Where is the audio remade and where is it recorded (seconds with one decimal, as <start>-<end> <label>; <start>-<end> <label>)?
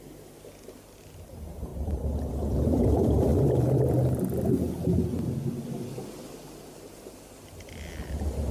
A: 0.0-1.7 recorded; 1.7-2.3 remade; 2.3-8.5 recorded